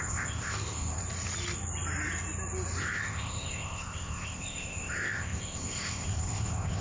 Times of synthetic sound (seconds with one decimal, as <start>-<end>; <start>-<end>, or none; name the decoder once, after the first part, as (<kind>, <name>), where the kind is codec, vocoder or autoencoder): 0.0-1.0 (codec, ZipCodec); 2.8-6.8